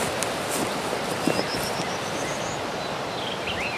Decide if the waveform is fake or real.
real